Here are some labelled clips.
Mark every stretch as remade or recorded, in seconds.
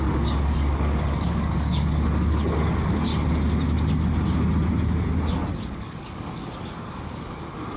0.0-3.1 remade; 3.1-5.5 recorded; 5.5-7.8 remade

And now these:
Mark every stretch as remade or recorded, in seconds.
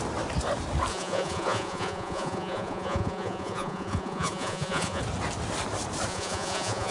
0.0-0.9 recorded; 0.9-5.0 remade; 5.0-6.1 recorded; 6.1-6.9 remade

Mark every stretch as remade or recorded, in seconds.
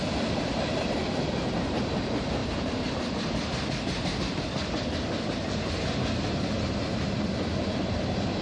0.0-2.4 recorded; 2.4-4.2 remade; 4.2-5.4 recorded; 5.4-6.0 remade; 6.0-8.4 recorded